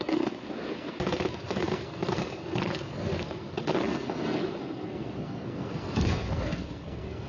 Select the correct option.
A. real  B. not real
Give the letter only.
B